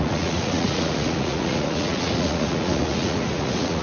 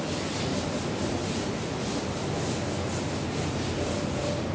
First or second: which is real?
second